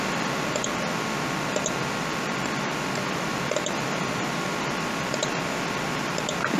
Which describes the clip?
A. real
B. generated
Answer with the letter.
B